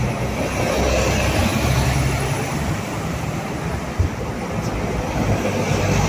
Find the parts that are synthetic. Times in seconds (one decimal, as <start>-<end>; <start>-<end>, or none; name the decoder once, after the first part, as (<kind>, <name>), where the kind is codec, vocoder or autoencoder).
1.5-3.8 (vocoder, BigVGAN v2)